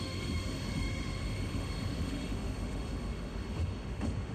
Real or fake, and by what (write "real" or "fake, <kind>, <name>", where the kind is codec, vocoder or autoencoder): fake, autoencoder, DAC-VAE